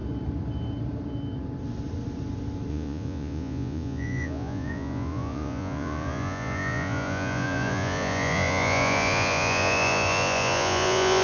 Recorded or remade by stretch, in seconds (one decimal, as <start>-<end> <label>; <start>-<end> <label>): 0.0-2.7 recorded; 2.7-11.2 remade